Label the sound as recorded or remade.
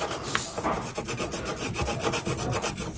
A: recorded